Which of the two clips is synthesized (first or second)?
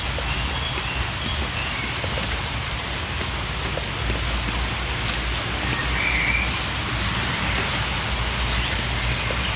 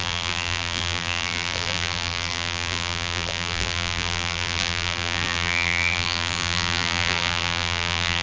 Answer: second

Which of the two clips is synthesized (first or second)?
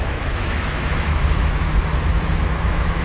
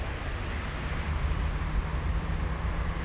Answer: first